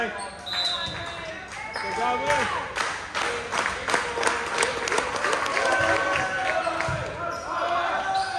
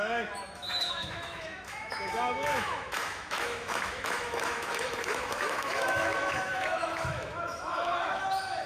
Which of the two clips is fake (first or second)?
second